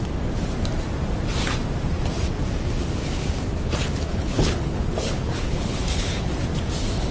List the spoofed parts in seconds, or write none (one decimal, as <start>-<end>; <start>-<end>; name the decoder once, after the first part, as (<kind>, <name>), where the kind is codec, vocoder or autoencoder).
4.1-6.3 (codec, HILCodec)